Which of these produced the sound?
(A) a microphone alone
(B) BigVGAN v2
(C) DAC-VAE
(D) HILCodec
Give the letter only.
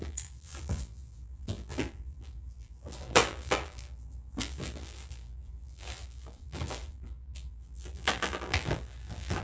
B